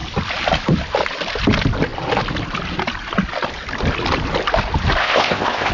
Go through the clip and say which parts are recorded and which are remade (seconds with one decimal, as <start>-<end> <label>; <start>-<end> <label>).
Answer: 0.0-5.0 recorded; 5.0-5.7 remade